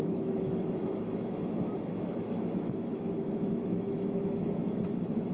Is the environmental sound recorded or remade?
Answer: remade